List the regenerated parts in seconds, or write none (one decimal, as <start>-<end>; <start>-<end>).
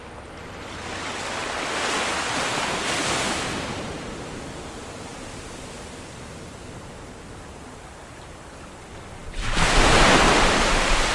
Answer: none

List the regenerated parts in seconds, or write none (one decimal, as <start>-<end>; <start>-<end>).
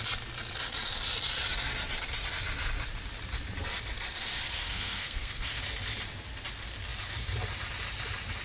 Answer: 4.6-5.6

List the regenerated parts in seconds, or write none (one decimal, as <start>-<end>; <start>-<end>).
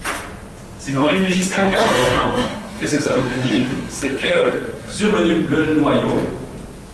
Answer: 0.9-5.0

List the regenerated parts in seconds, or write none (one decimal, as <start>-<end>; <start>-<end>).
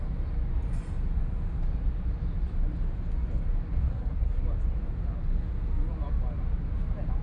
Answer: 3.9-4.4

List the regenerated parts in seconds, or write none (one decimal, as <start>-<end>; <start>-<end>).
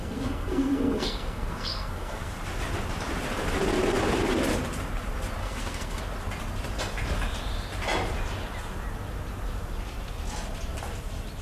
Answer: 0.0-2.3; 5.4-6.0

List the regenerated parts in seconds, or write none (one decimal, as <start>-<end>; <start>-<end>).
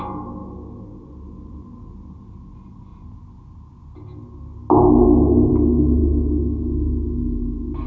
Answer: none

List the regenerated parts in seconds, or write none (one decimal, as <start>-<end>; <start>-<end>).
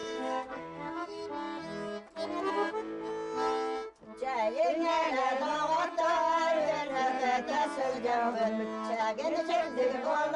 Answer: 0.0-1.3